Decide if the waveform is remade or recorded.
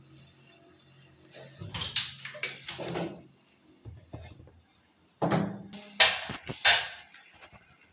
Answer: recorded